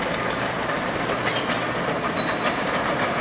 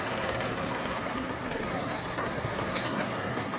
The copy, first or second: second